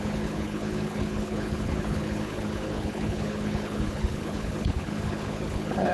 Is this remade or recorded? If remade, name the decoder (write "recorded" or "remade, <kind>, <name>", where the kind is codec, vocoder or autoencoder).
remade, codec, HILCodec